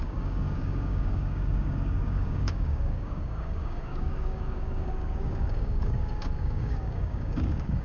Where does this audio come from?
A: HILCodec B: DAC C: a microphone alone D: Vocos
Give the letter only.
B